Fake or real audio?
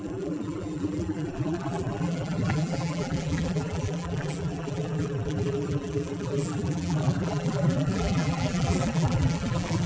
fake